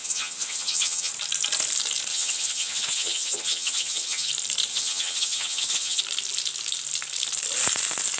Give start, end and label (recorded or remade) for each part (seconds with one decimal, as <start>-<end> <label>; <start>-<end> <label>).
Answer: 0.0-1.1 remade; 1.1-2.1 recorded; 2.1-4.3 remade; 4.3-4.7 recorded; 4.7-6.0 remade; 6.0-8.2 recorded